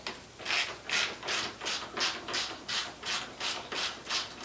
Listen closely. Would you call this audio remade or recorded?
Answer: recorded